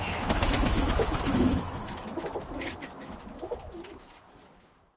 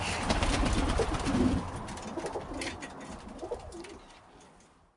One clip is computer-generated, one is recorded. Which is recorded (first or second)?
second